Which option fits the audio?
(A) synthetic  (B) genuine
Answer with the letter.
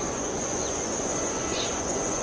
A